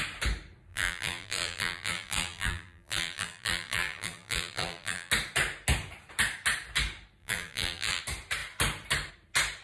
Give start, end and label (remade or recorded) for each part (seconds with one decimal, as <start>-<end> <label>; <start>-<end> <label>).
0.0-0.7 recorded; 0.7-5.1 remade; 5.1-7.2 recorded; 7.2-8.0 remade; 8.0-9.6 recorded